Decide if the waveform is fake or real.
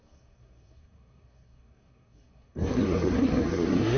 fake